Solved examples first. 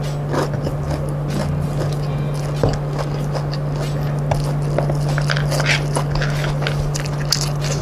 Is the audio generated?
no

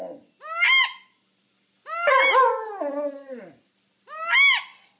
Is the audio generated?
no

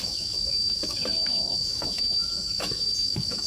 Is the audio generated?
yes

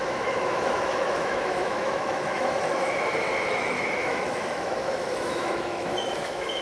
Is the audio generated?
yes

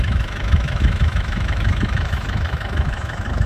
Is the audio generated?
yes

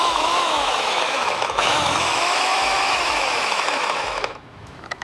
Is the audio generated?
yes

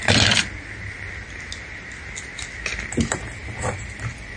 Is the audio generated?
no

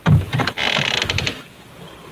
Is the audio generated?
no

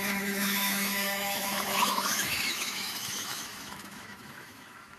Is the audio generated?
yes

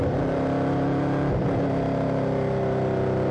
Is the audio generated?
no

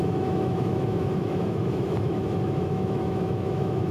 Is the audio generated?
yes